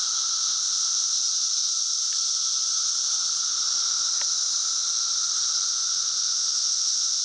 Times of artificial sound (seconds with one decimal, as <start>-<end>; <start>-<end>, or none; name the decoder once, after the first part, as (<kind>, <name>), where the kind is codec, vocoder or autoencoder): 0.0-1.2 (codec, ZipCodec); 5.7-7.2